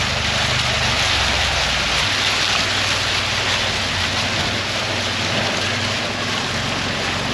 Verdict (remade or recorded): recorded